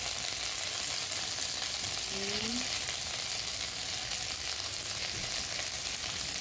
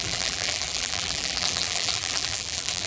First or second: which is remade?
second